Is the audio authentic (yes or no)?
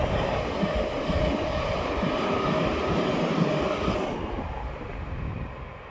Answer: yes